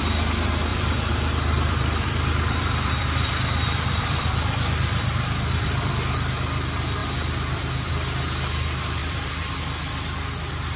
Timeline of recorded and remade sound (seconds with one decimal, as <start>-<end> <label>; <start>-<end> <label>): 0.0-0.7 recorded; 0.7-5.9 remade; 5.9-7.0 recorded; 7.0-7.9 remade; 7.9-9.0 recorded; 9.0-9.6 remade; 9.6-10.8 recorded